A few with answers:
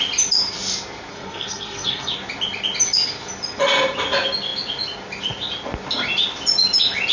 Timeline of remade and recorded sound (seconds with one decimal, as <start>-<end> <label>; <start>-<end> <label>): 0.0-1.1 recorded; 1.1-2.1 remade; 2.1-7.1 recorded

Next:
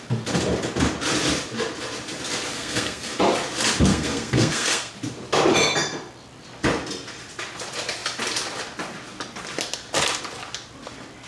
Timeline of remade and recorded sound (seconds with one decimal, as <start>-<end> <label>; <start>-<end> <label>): 0.0-2.5 recorded; 2.5-3.2 remade; 3.2-3.9 recorded; 3.9-4.9 remade; 4.9-11.3 recorded

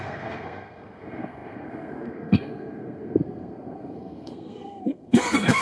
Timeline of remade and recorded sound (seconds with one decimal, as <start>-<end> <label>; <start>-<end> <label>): 0.0-5.6 remade

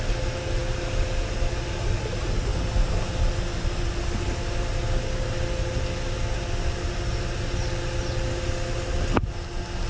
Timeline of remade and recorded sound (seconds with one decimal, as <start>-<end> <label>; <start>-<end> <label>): 0.0-9.9 recorded